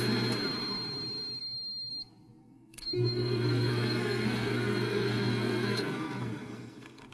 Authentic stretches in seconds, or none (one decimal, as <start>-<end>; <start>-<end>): 0.0-1.4; 1.9-2.4